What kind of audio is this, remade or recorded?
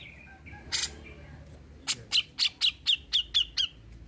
recorded